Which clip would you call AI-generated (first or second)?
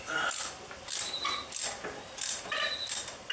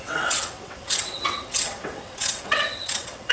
second